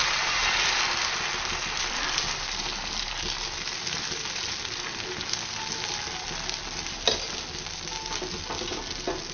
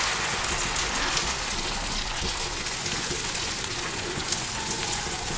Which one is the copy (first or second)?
second